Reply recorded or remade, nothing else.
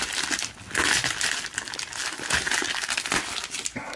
recorded